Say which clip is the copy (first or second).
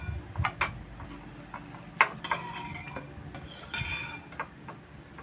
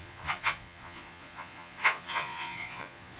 second